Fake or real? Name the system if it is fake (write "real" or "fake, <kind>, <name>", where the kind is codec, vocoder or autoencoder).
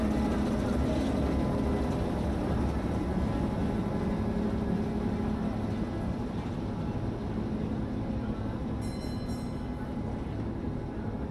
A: real